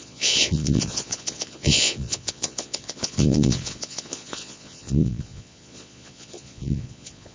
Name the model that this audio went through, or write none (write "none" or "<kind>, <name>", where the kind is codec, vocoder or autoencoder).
vocoder, Vocos